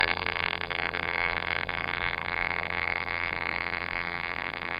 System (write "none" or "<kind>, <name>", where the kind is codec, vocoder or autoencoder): vocoder, BigVGAN v2